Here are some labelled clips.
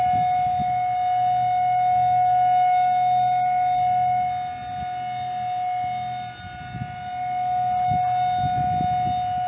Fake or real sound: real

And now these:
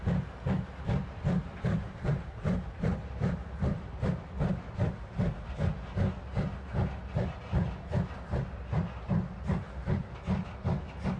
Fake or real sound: real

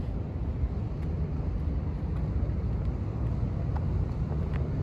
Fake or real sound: real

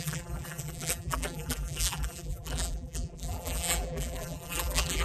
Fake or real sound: fake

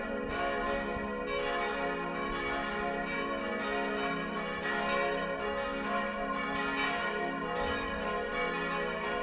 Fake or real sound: real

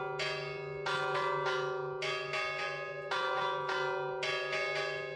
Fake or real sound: real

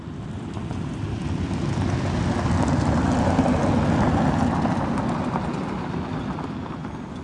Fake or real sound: real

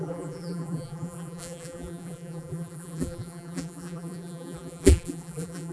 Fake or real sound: fake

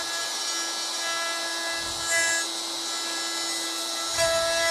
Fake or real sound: real